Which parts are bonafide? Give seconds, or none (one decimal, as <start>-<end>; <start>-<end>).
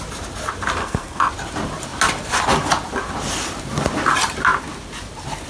0.0-0.8; 1.3-5.5